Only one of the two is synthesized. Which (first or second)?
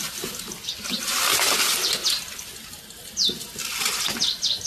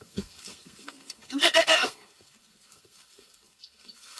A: second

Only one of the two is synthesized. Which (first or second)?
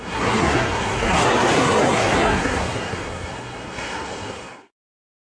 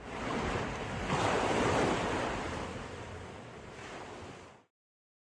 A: first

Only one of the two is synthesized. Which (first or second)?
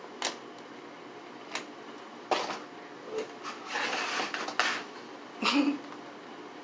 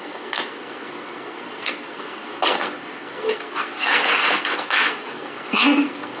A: second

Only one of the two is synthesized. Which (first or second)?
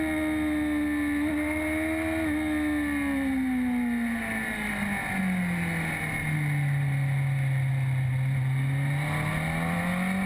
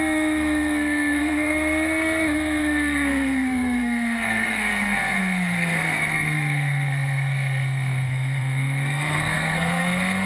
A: second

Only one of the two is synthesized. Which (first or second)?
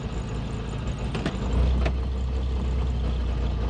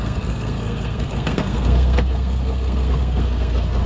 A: second